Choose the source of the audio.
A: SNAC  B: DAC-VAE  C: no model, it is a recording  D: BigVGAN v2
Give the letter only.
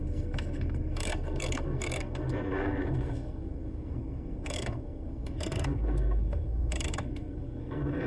A